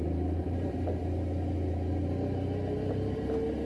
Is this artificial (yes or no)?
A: no